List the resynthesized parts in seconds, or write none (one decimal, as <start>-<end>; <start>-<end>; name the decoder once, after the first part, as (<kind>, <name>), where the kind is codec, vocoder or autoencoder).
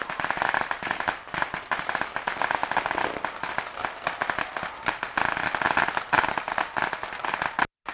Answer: 0.0-2.0 (vocoder, BigVGAN v2); 7.2-7.9